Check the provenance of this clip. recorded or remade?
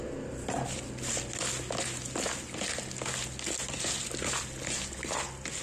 recorded